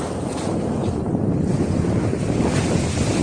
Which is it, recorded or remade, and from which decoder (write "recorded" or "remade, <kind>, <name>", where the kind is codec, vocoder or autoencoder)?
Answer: remade, vocoder, BigVGAN v2